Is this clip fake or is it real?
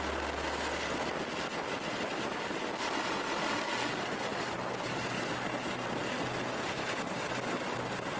real